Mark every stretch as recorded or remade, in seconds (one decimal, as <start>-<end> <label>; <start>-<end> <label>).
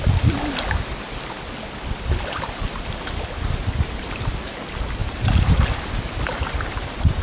0.0-5.0 recorded; 5.0-5.9 remade; 5.9-7.2 recorded